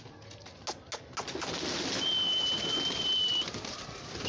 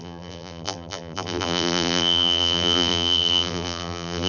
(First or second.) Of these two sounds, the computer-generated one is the second